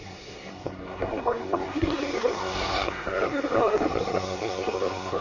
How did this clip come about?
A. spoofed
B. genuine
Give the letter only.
A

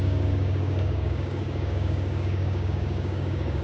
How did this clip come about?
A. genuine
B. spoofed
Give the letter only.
B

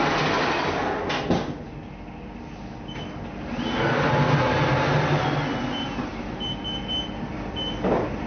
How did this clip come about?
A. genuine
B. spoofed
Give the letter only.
A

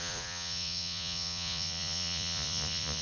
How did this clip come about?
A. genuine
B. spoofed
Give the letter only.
B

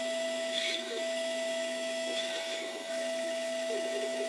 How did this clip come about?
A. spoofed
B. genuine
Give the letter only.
A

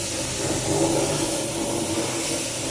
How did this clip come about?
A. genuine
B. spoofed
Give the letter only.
A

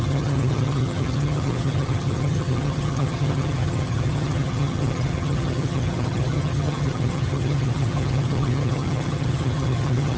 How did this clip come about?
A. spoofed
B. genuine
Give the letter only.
A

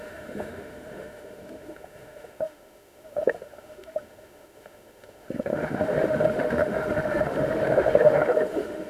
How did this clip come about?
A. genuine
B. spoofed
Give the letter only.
B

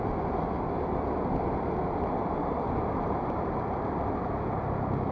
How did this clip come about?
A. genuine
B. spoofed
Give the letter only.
A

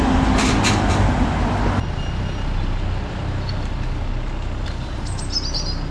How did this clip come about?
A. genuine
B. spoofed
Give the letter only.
A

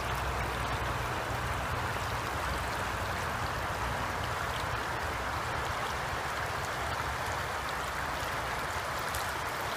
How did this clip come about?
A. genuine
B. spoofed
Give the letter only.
A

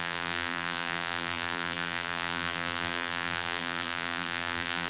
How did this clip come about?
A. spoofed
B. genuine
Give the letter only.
A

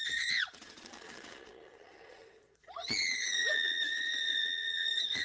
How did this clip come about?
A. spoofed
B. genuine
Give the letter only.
A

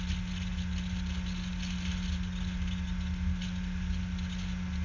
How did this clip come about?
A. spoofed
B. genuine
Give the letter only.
B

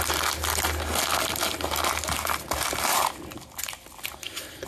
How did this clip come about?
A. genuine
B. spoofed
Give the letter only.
A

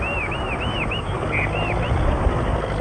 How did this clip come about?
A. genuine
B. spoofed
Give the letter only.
A